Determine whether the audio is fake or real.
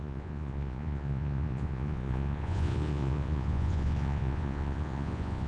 fake